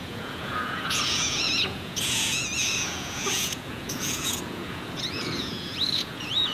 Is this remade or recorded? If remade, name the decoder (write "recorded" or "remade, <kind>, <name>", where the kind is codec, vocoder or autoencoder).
remade, vocoder, Vocos